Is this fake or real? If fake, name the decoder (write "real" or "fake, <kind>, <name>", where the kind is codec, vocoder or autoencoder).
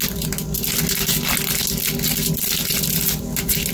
real